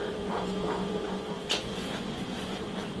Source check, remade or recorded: remade